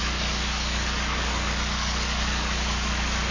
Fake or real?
fake